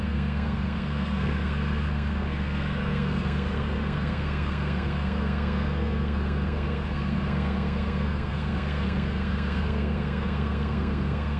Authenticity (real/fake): fake